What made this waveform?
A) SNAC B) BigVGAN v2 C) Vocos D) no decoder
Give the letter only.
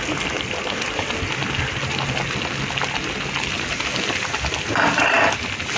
D